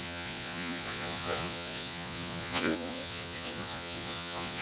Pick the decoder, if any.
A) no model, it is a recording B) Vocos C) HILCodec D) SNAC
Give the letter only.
B